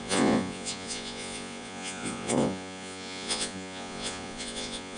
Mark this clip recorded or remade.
remade